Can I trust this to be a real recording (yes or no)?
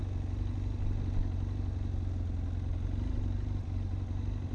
yes